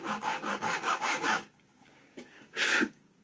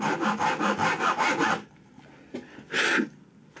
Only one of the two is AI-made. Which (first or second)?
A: first